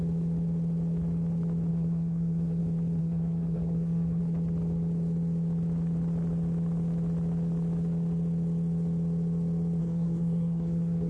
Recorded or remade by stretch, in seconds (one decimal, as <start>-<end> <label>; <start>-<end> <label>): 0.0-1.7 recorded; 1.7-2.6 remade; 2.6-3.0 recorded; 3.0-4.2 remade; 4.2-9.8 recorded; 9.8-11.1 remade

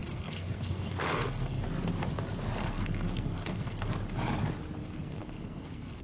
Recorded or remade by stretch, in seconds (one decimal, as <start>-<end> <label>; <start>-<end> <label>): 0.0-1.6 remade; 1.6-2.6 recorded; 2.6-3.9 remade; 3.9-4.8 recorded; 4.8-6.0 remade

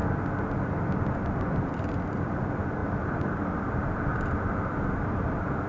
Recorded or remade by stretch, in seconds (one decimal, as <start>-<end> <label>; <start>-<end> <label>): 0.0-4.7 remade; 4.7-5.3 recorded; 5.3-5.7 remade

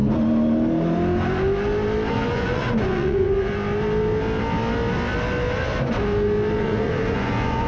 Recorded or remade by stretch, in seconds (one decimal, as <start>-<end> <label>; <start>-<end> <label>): 0.0-2.1 recorded; 2.1-3.5 remade; 3.5-6.6 recorded; 6.6-7.7 remade

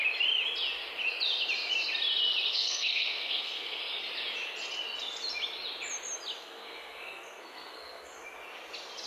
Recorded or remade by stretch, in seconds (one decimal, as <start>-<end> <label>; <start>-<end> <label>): 0.0-2.5 recorded; 2.5-3.8 remade; 3.8-6.4 recorded; 6.4-8.1 remade; 8.1-9.1 recorded

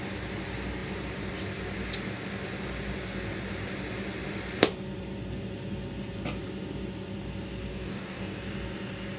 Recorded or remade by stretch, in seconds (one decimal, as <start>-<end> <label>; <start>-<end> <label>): 0.0-7.7 recorded; 7.7-8.4 remade; 8.4-9.2 recorded